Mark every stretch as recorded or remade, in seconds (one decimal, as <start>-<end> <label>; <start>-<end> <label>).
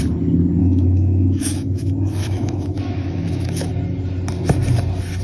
0.0-0.6 recorded; 0.6-3.7 remade; 3.7-5.2 recorded